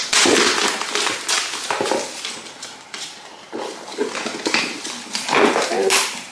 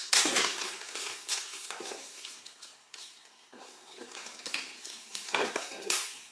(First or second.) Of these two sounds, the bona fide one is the first